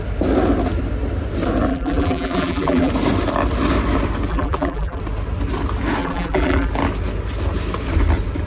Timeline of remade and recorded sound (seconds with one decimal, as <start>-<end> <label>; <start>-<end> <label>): 0.0-1.7 recorded; 1.7-2.9 remade; 2.9-4.3 recorded; 4.3-5.0 remade; 5.0-6.0 recorded; 6.0-6.7 remade; 6.7-8.5 recorded